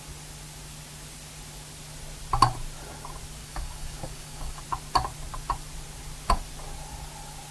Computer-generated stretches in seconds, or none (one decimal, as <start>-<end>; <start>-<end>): 3.4-4.6